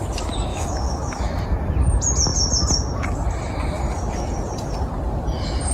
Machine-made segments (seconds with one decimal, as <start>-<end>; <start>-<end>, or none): 0.5-1.4